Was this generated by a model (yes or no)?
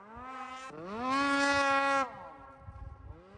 no